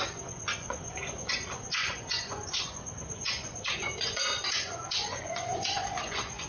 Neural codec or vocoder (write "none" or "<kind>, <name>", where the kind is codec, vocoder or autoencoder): vocoder, Vocos